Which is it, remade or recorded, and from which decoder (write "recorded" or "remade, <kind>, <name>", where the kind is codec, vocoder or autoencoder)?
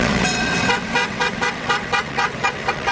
remade, vocoder, WaveNeXt